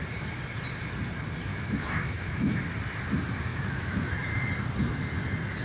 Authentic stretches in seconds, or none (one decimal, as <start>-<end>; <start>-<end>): 0.0-1.5; 2.6-3.5; 4.1-5.6